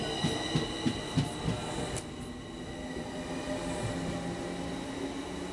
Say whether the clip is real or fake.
real